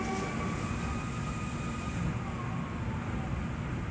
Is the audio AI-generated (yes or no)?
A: no